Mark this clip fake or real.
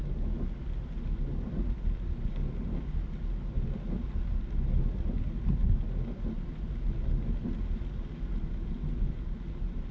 real